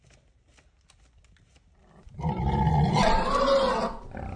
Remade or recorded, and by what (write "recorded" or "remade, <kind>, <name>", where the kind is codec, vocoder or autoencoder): recorded